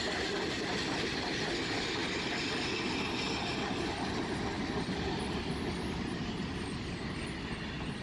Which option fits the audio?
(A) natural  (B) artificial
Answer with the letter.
A